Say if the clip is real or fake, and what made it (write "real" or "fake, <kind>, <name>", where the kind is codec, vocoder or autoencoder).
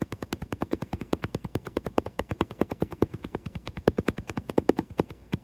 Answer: fake, codec, SNAC